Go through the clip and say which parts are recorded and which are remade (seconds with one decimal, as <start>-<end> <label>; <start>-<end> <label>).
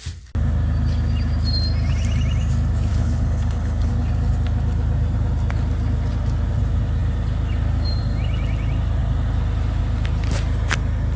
0.0-2.9 recorded; 2.9-3.9 remade; 3.9-11.2 recorded